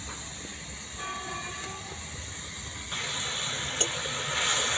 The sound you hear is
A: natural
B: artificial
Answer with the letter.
A